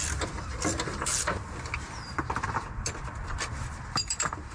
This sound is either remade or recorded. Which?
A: recorded